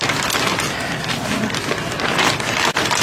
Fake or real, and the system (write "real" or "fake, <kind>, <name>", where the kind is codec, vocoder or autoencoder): real